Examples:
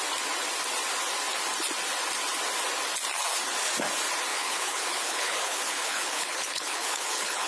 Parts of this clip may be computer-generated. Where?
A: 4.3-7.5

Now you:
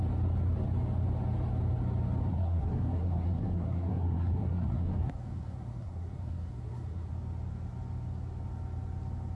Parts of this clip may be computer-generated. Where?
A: 2.3-7.1

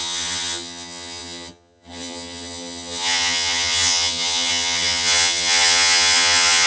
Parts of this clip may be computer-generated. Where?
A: 0.0-6.7

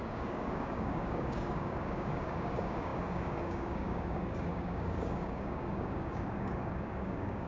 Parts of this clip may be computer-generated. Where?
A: 0.0-7.5

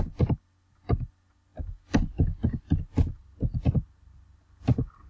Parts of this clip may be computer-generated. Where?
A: none

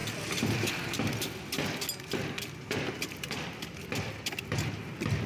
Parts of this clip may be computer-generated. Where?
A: none

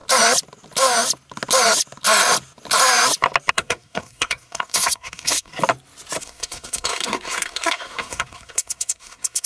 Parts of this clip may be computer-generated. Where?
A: 3.5-5.5; 6.2-9.5

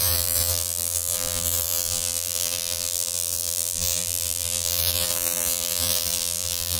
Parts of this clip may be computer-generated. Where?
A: 0.0-6.8